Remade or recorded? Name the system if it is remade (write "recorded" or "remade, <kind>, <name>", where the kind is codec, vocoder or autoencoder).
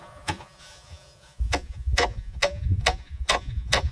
remade, vocoder, Vocos